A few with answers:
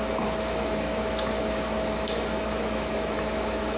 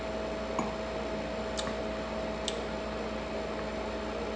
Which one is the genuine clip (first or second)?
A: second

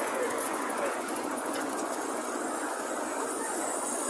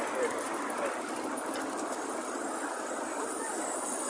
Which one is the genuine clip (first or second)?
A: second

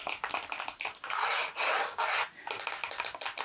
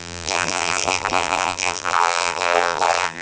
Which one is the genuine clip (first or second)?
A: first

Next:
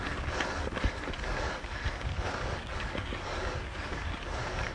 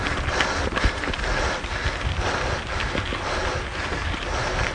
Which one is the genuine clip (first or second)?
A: second